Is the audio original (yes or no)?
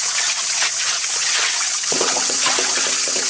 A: no